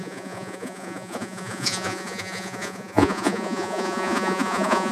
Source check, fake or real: fake